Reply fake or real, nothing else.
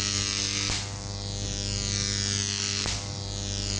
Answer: real